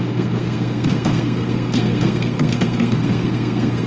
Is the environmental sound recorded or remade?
remade